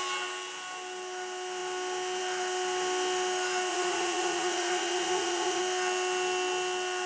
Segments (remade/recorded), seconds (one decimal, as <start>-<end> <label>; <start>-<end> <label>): 0.0-3.7 recorded; 3.7-5.6 remade; 5.6-7.1 recorded